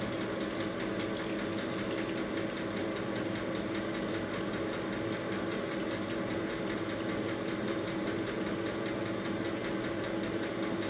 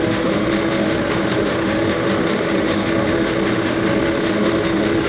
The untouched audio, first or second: first